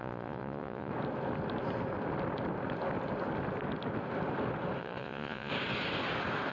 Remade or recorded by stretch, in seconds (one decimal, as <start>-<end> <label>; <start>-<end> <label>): 0.0-0.9 remade; 0.9-4.8 recorded; 4.8-5.5 remade; 5.5-6.5 recorded